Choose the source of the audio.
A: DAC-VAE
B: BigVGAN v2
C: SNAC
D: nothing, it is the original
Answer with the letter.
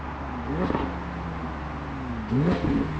D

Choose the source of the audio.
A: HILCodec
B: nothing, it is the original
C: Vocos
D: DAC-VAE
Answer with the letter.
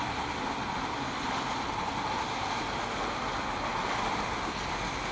B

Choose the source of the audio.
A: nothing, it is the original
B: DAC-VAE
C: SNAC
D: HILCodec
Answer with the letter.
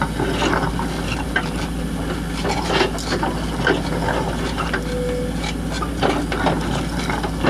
A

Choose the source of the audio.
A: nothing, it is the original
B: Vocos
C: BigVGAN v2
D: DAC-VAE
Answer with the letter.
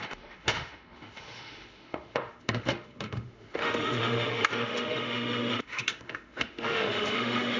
D